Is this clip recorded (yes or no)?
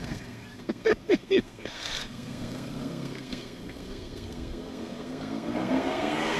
no